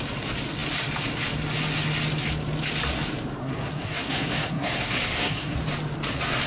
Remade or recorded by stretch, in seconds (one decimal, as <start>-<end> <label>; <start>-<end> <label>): 0.0-3.4 recorded; 3.4-5.6 remade; 5.6-6.5 recorded